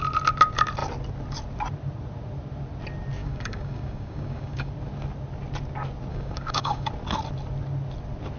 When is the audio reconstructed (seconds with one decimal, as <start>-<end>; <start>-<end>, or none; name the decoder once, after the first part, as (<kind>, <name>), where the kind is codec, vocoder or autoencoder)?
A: 3.2-4.7 (codec, DAC); 6.1-6.9